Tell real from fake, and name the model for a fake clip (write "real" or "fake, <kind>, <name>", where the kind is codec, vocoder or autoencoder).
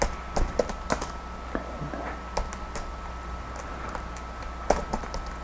real